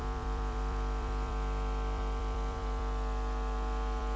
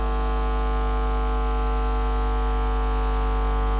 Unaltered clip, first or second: second